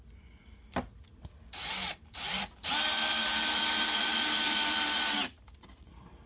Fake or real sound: fake